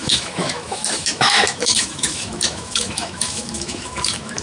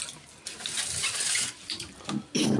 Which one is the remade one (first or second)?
first